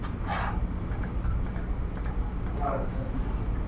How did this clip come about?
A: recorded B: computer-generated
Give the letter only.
A